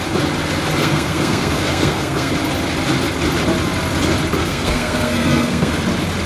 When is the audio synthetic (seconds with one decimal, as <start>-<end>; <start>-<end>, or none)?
0.8-2.3; 4.4-5.7